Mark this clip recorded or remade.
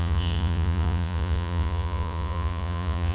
remade